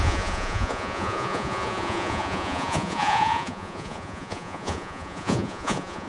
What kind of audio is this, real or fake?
fake